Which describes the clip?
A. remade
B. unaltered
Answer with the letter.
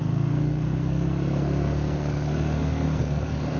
A